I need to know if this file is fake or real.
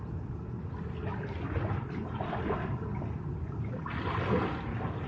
fake